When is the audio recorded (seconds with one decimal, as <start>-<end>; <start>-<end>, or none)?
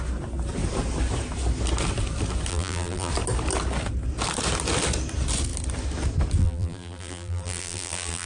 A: 0.0-2.5; 3.1-6.4